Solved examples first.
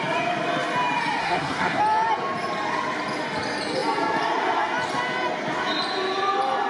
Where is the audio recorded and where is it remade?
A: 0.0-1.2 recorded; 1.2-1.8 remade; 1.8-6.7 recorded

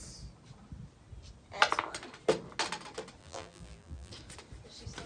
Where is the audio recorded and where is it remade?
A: 0.0-3.2 recorded; 3.2-4.1 remade; 4.1-5.1 recorded

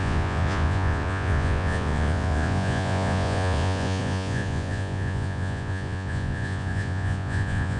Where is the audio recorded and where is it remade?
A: 0.0-7.8 remade

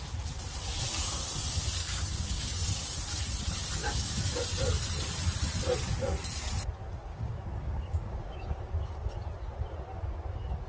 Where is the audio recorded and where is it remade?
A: 0.0-1.8 recorded; 1.8-2.6 remade; 2.6-3.8 recorded; 3.8-4.4 remade; 4.4-7.1 recorded; 7.1-8.7 remade; 8.7-10.7 recorded

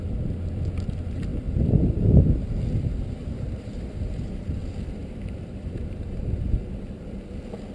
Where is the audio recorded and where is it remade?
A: 0.0-3.2 recorded; 3.2-4.6 remade; 4.6-5.0 recorded; 5.0-6.2 remade; 6.2-7.7 recorded

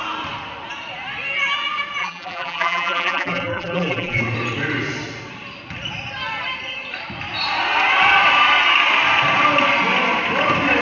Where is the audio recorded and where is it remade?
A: 0.0-2.0 recorded; 2.0-4.2 remade; 4.2-10.8 recorded